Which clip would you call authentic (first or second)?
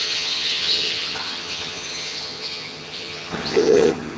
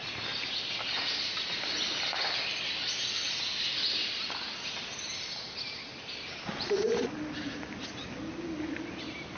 second